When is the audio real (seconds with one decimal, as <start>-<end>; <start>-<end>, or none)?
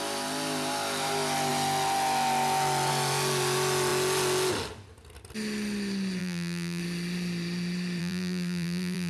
0.0-6.2; 6.8-8.0